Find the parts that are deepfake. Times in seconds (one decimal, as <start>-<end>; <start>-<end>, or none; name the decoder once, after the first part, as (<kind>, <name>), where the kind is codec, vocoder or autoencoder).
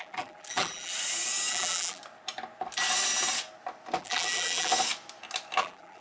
0.0-0.9 (vocoder, BigVGAN v2); 1.5-2.0; 4.0-4.7; 5.6-6.0